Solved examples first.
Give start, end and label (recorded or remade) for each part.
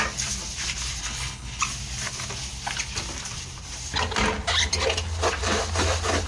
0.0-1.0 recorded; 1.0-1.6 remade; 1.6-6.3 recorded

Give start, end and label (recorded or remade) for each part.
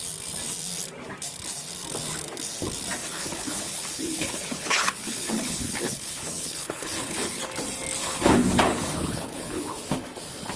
0.0-3.0 recorded; 3.0-7.4 remade; 7.4-8.0 recorded; 8.0-9.8 remade; 9.8-10.6 recorded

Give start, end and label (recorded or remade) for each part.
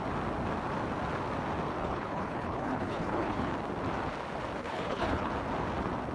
0.0-1.8 recorded; 1.8-3.5 remade; 3.5-4.6 recorded; 4.6-5.3 remade; 5.3-6.1 recorded